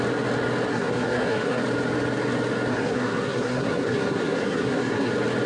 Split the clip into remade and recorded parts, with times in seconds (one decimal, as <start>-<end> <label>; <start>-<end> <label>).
0.0-0.7 recorded; 0.7-1.6 remade; 1.6-2.7 recorded; 2.7-5.1 remade; 5.1-5.5 recorded